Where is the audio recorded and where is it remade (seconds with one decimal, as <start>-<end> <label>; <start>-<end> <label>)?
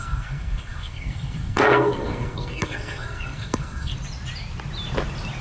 0.0-3.9 remade; 3.9-5.4 recorded